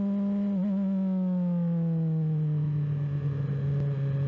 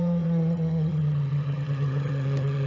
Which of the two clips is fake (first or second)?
second